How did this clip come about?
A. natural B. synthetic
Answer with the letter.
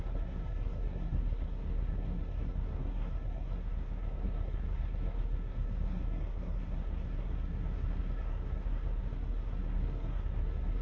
B